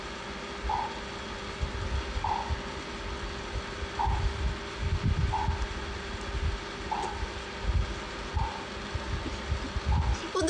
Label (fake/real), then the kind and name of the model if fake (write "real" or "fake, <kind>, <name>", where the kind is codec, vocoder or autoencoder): real